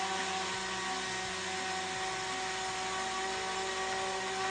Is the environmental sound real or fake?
real